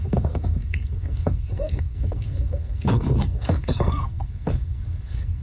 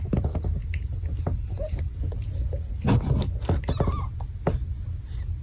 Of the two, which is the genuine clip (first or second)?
second